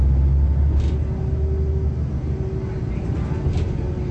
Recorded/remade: recorded